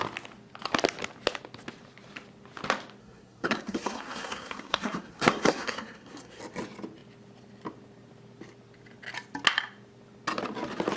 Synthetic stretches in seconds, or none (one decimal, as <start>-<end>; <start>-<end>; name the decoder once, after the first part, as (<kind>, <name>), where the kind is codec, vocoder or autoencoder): 3.0-6.4 (codec, SNAC)